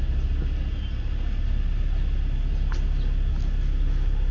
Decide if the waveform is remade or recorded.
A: recorded